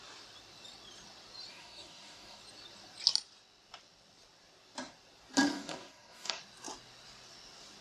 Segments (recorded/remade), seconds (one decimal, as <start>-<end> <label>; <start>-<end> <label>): 0.0-1.5 recorded; 1.5-2.4 remade; 2.4-5.5 recorded; 5.5-6.4 remade; 6.4-7.8 recorded